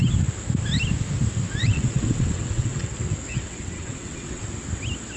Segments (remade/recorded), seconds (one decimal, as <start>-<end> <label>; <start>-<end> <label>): 0.0-1.6 recorded; 1.6-2.9 remade; 2.9-3.3 recorded; 3.3-4.4 remade; 4.4-5.2 recorded